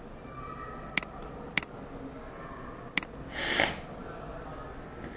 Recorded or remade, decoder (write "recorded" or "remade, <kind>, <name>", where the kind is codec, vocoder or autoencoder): recorded